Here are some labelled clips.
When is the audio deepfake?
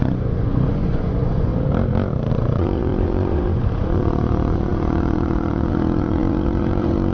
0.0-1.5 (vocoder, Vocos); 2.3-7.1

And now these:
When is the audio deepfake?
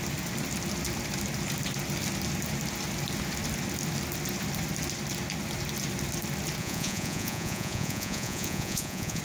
6.6-9.2 (vocoder, Vocos)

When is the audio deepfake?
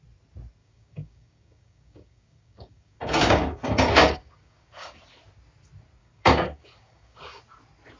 0.6-5.0 (codec, DAC); 6.0-7.4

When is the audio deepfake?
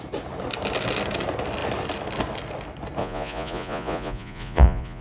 3.0-5.0 (vocoder, Vocos)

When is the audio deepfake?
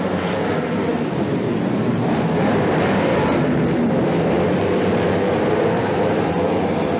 0.0-4.6 (vocoder, BigVGAN v2); 5.3-7.0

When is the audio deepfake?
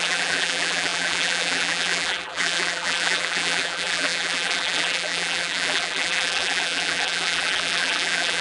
0.0-8.4 (vocoder, BigVGAN v2)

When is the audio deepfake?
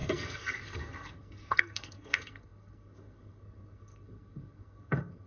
0.0-5.3 (codec, SNAC)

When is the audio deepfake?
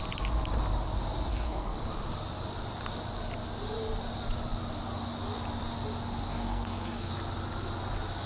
1.3-1.9 (codec, SNAC); 6.3-7.1